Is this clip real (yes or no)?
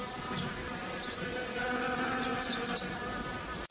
yes